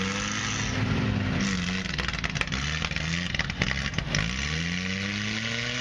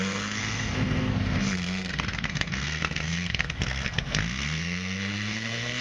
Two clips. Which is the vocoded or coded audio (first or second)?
second